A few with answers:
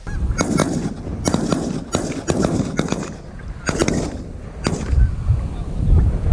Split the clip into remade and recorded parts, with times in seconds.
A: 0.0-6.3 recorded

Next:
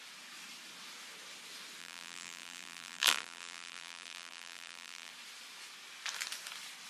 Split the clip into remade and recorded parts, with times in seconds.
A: 0.0-1.8 recorded; 1.8-5.1 remade; 5.1-6.9 recorded

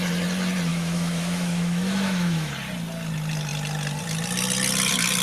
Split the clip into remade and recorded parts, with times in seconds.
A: 0.0-0.7 recorded; 0.7-2.5 remade; 2.5-5.2 recorded